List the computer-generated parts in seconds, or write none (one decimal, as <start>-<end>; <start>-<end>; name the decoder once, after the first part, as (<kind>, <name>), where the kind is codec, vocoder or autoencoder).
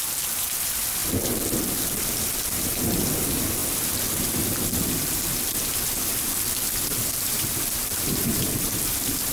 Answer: 0.0-9.3 (vocoder, BigVGAN v2)